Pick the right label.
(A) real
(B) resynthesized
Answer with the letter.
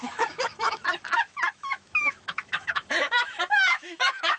B